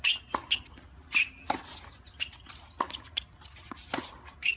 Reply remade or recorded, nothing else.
recorded